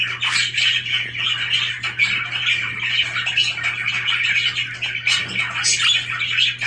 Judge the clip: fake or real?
real